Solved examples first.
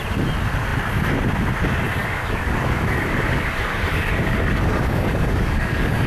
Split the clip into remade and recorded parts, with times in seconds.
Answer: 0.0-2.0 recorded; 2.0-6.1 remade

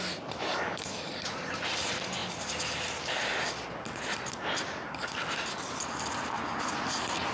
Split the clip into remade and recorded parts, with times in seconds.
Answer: 0.0-0.5 recorded; 0.5-1.1 remade; 1.1-7.3 recorded